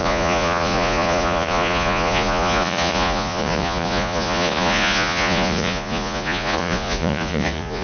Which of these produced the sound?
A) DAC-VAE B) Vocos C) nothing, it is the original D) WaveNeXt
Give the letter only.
B